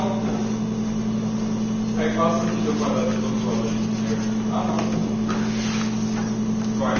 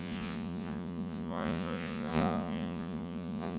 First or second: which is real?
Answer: first